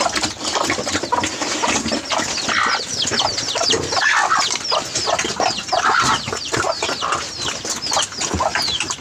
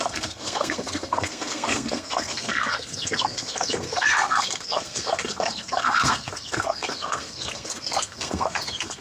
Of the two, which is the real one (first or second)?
first